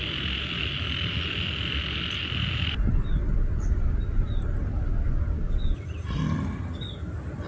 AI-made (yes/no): no